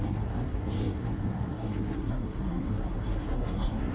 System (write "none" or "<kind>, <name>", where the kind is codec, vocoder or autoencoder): codec, SNAC